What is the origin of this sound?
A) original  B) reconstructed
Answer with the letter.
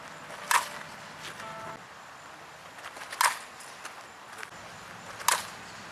A